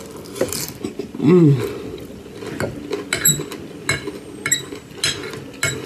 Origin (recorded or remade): recorded